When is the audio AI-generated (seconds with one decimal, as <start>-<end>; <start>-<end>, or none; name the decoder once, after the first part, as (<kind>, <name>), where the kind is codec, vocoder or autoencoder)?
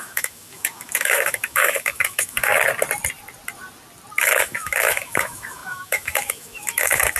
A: 0.0-2.5 (autoencoder, DAC-VAE); 4.2-7.2